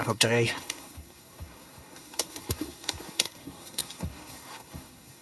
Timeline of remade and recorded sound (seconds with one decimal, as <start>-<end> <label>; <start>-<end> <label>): 0.0-5.2 remade